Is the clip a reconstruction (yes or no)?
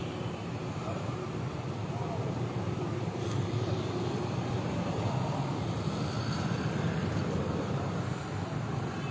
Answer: yes